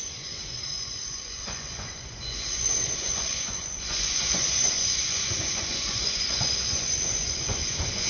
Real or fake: fake